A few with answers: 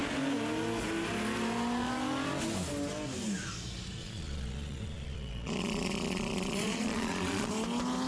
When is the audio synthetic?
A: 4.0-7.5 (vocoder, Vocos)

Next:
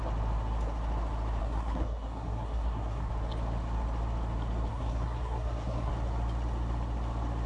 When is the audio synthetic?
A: 1.4-3.1 (codec, SNAC); 4.7-5.9

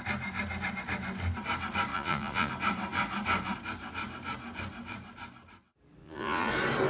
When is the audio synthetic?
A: 1.9-2.5 (vocoder, Vocos); 6.0-6.5